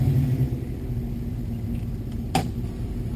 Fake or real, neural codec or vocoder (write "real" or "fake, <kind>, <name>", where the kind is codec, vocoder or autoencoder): real